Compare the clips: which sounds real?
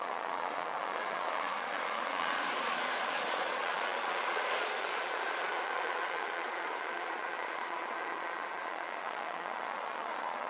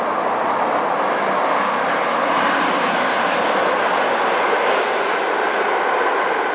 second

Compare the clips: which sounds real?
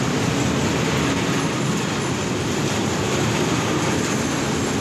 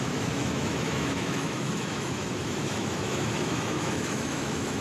first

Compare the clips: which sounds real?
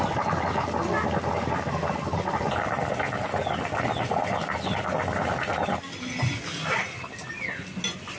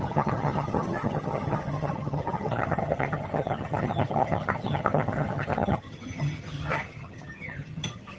first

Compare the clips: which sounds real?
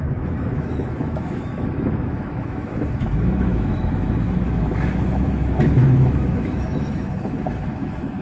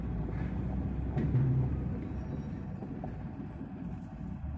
second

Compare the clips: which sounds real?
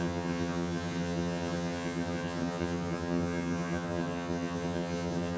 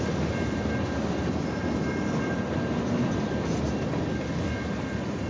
second